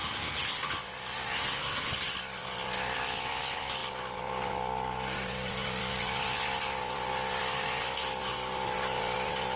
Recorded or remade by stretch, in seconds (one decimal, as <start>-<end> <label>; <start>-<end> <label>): 0.0-2.6 recorded; 2.6-3.2 remade; 3.2-9.6 recorded

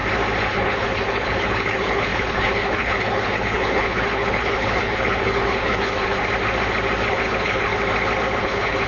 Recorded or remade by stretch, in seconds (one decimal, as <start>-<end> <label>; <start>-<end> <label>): 0.0-0.5 recorded; 0.5-6.2 remade; 6.2-7.1 recorded; 7.1-7.7 remade; 7.7-8.4 recorded; 8.4-8.9 remade

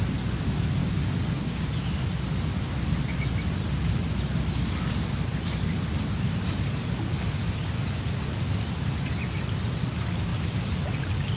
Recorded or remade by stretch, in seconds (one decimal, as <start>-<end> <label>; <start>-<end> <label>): 0.0-0.8 recorded; 0.8-1.7 remade; 1.7-11.4 recorded

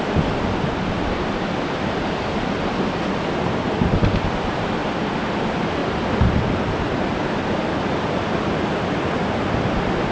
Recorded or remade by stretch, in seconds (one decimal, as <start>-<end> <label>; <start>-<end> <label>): 0.0-4.8 recorded; 4.8-5.3 remade; 5.3-5.8 recorded; 5.8-6.6 remade; 6.6-7.1 recorded; 7.1-9.2 remade; 9.2-10.1 recorded

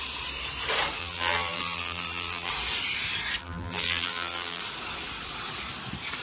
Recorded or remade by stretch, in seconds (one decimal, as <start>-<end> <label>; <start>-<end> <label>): 0.0-1.0 recorded; 1.0-2.5 remade; 2.5-3.4 recorded; 3.4-4.6 remade; 4.6-6.2 recorded

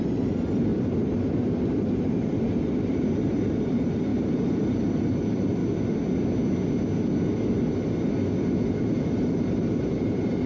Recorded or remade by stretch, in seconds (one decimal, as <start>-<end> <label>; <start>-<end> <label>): 0.0-5.6 remade; 5.6-8.9 recorded; 8.9-10.5 remade

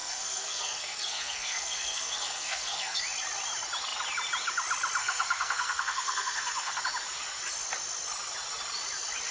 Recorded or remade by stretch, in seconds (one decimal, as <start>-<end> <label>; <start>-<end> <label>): 0.0-3.0 remade; 3.0-5.0 recorded; 5.0-6.8 remade; 6.8-9.3 recorded